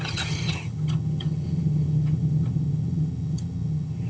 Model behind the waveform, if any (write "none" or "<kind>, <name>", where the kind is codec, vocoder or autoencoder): vocoder, HiFi-GAN